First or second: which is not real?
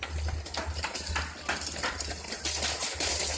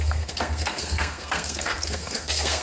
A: second